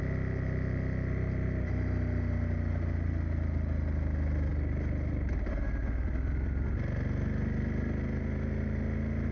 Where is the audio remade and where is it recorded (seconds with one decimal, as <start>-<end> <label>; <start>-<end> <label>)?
0.0-9.3 recorded

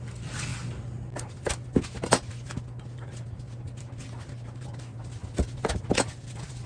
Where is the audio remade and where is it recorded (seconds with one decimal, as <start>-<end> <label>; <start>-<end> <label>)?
0.0-6.7 recorded

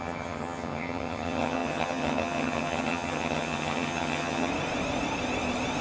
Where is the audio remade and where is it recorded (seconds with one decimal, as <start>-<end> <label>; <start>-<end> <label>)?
0.0-4.5 remade; 4.5-5.8 recorded

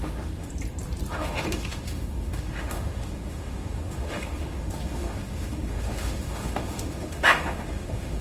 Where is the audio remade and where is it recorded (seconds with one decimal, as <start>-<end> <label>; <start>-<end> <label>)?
0.0-0.5 remade; 0.5-1.1 recorded; 1.1-8.2 remade

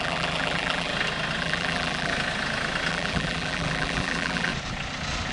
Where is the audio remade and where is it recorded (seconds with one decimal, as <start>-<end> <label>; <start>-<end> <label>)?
0.0-0.9 remade; 0.9-1.4 recorded; 1.4-2.1 remade; 2.1-2.9 recorded; 2.9-4.5 remade; 4.5-5.3 recorded

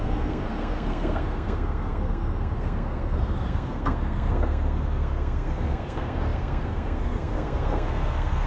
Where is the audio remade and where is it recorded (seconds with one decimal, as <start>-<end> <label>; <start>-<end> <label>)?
0.0-8.5 remade

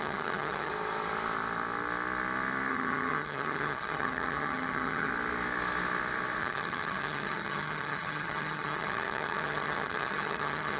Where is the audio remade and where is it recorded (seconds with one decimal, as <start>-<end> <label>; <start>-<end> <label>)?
0.0-0.7 remade; 0.7-2.7 recorded; 2.7-5.1 remade; 5.1-6.4 recorded; 6.4-10.8 remade

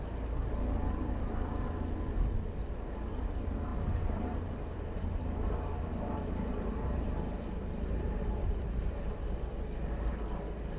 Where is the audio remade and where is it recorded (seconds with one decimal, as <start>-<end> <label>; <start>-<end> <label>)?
0.0-3.7 recorded; 3.7-5.5 remade; 5.5-5.9 recorded; 5.9-9.4 remade; 9.4-10.8 recorded